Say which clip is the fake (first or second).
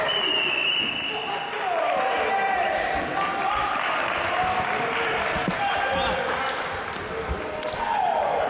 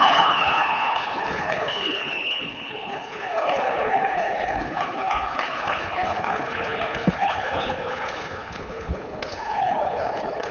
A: second